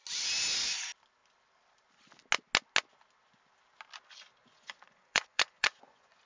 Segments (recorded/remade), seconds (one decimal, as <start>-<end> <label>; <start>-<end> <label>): 0.0-4.4 recorded; 4.4-6.2 remade